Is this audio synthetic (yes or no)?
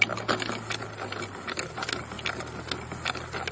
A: no